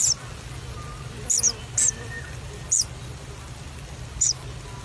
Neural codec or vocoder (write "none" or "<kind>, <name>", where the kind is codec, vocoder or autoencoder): none